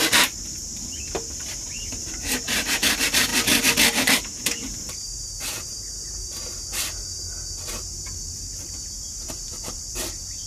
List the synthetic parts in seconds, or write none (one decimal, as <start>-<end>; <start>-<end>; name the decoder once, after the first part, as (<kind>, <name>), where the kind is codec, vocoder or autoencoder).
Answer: 0.0-0.7 (vocoder, BigVGAN v2); 1.7-3.3; 4.1-10.5